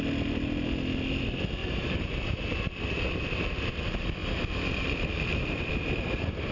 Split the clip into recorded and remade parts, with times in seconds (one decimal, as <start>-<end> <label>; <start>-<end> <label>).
0.0-1.6 recorded; 1.6-3.7 remade; 3.7-4.2 recorded; 4.2-5.7 remade; 5.7-6.5 recorded